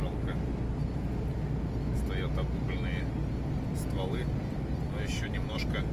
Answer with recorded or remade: recorded